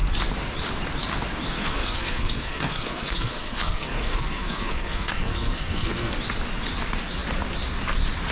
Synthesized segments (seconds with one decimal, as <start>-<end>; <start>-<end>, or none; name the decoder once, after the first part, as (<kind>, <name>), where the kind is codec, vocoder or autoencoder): 1.5-6.1 (codec, SNAC)